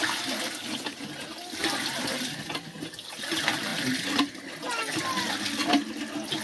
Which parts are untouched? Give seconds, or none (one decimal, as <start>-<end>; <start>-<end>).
0.0-6.4